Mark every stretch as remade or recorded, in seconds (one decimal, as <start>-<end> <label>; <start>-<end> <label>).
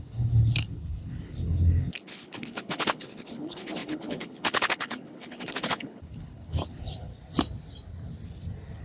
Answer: 0.0-7.1 remade; 7.1-8.8 recorded